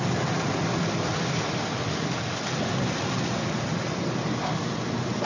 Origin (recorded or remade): recorded